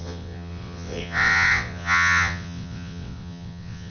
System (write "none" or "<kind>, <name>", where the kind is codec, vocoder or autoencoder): vocoder, WaveNeXt